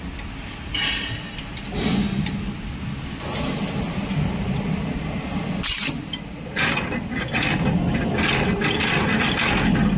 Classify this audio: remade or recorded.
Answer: recorded